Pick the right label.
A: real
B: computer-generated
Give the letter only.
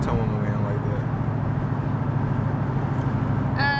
A